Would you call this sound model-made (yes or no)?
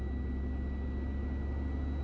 no